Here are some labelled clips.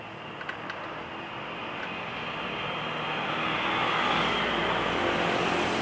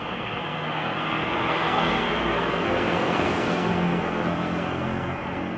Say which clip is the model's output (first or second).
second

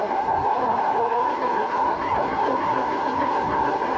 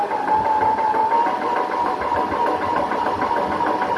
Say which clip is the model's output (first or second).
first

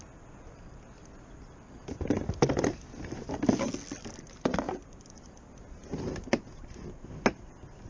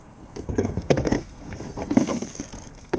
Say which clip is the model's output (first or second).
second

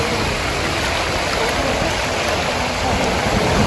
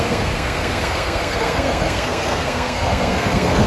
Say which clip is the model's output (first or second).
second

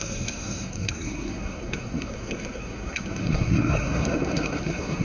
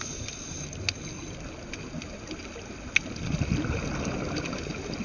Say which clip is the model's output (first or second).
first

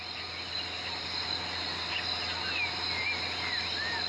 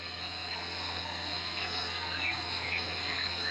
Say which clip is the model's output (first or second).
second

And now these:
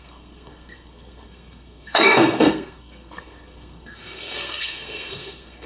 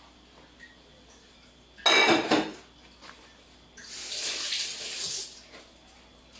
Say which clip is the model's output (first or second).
first